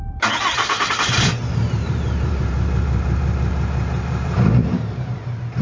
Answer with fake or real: fake